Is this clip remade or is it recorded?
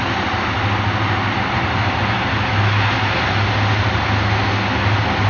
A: recorded